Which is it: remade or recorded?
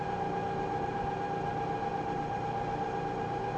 recorded